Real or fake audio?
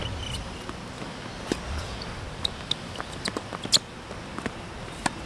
real